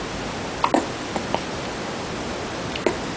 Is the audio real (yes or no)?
yes